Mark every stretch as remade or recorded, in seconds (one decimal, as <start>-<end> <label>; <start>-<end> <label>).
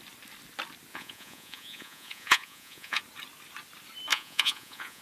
0.0-0.9 recorded; 0.9-3.0 remade; 3.0-4.1 recorded; 4.1-5.0 remade